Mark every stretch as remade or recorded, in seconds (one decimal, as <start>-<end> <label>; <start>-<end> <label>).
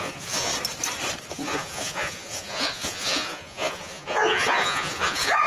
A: 0.0-0.5 remade; 0.5-1.3 recorded; 1.3-5.5 remade